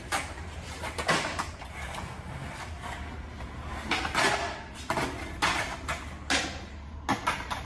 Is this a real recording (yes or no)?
yes